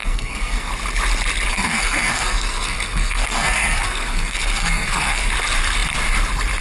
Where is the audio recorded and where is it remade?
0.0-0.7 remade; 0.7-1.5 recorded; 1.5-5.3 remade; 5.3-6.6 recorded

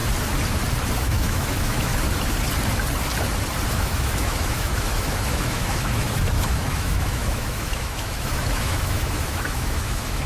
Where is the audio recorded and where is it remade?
0.0-1.0 recorded; 1.0-1.9 remade; 1.9-3.7 recorded; 3.7-10.3 remade

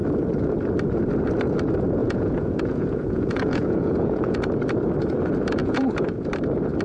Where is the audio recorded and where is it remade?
0.0-2.0 recorded; 2.0-4.5 remade; 4.5-5.6 recorded; 5.6-6.3 remade; 6.3-6.8 recorded

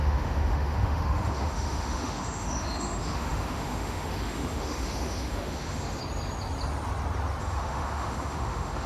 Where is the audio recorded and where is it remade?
0.0-6.0 remade; 6.0-7.4 recorded; 7.4-8.9 remade

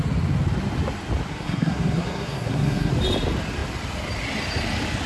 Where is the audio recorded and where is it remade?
0.0-1.3 recorded; 1.3-2.9 remade; 2.9-5.1 recorded

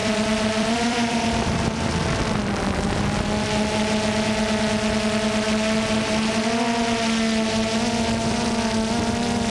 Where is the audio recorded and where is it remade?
0.0-2.9 remade; 2.9-9.5 recorded